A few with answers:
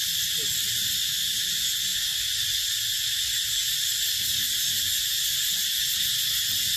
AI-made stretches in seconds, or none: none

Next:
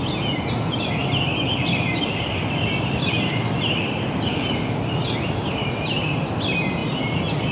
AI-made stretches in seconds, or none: 1.0-5.5 (vocoder, BigVGAN v2)